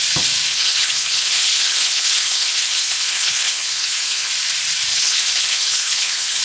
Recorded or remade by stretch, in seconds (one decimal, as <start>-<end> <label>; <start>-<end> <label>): 0.0-0.5 recorded; 0.5-4.3 remade; 4.3-4.9 recorded; 4.9-6.4 remade

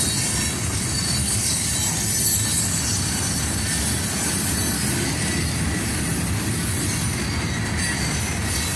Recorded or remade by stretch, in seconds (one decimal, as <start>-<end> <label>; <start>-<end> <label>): 0.0-1.2 recorded; 1.2-1.7 remade; 1.7-8.8 recorded

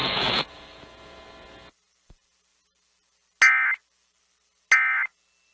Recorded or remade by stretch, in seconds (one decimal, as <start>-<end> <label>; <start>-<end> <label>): 0.0-1.2 remade; 1.2-5.5 recorded

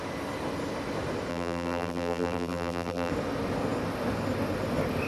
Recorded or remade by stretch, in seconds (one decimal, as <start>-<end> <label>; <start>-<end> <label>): 0.0-1.3 recorded; 1.3-3.1 remade; 3.1-5.1 recorded

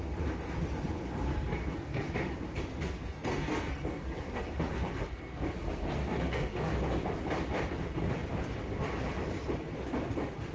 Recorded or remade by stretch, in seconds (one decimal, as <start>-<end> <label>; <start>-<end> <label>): 0.0-1.3 recorded; 1.3-2.1 remade; 2.1-2.7 recorded; 2.7-6.7 remade; 6.7-10.5 recorded

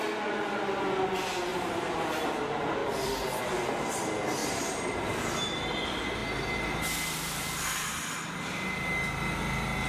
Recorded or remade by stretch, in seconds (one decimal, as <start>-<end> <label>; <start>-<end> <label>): 0.0-1.5 recorded; 1.5-2.1 remade; 2.1-4.4 recorded; 4.4-5.1 remade; 5.1-9.9 recorded

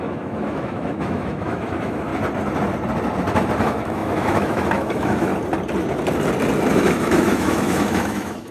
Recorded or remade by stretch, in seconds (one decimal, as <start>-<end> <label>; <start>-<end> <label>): 0.0-2.1 remade; 2.1-3.6 recorded; 3.6-5.3 remade; 5.3-6.7 recorded; 6.7-8.5 remade